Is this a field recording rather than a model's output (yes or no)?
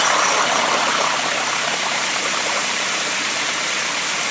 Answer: no